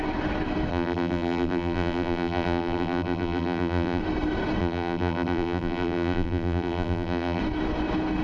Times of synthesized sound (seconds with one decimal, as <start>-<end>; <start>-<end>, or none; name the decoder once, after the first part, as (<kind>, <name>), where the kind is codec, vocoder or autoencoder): 0.7-4.0 (vocoder, BigVGAN v2); 4.6-7.4